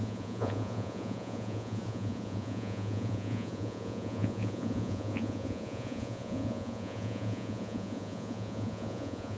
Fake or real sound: fake